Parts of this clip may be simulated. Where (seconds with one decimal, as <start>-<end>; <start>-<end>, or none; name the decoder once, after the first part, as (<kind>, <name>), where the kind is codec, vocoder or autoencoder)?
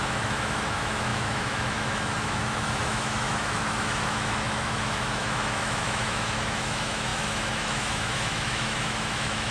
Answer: 0.0-9.5 (autoencoder, DAC-VAE)